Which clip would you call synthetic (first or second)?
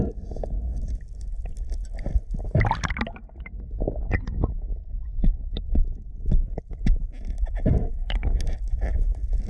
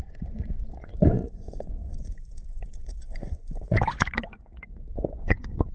second